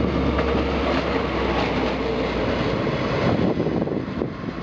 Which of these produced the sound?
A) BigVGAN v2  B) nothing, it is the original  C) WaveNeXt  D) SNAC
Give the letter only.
B